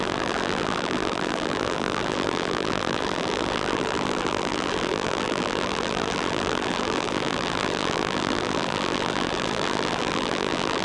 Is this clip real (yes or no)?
no